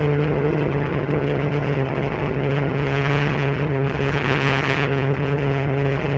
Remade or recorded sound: remade